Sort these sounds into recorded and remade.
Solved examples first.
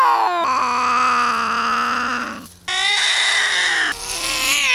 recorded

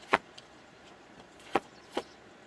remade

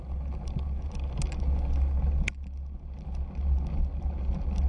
recorded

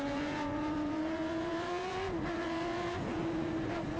remade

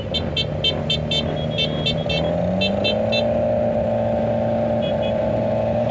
recorded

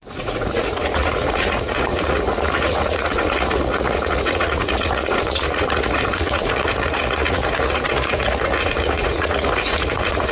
remade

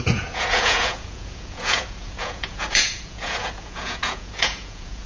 remade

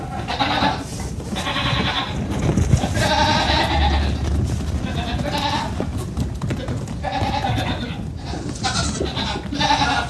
recorded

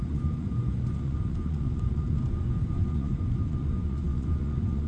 remade